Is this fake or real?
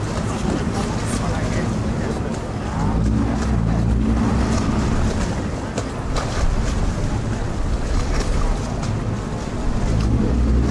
real